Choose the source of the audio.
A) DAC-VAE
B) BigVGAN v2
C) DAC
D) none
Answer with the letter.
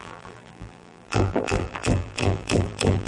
B